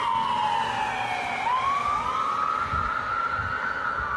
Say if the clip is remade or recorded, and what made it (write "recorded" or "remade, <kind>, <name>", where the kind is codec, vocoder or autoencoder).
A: recorded